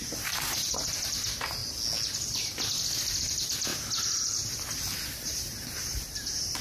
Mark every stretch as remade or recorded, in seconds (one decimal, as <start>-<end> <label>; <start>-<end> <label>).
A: 0.0-1.6 remade; 1.6-3.2 recorded; 3.2-6.6 remade